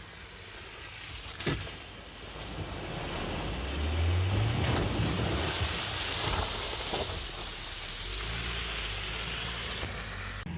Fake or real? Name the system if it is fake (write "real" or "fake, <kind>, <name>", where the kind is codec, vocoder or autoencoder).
real